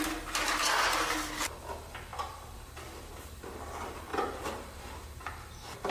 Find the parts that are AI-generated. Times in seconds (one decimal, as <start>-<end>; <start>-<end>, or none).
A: 2.1-2.7; 4.1-4.8